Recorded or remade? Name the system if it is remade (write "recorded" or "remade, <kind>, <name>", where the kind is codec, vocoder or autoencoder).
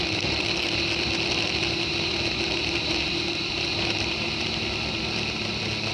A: recorded